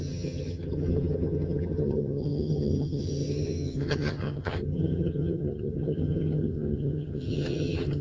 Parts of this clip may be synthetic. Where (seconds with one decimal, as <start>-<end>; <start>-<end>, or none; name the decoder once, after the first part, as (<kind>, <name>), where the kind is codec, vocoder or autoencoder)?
0.0-8.0 (vocoder, HiFi-GAN)